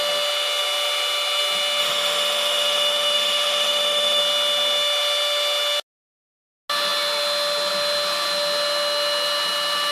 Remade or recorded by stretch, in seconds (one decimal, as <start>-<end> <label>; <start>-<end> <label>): 0.0-1.8 recorded; 1.8-4.2 remade; 4.2-9.9 recorded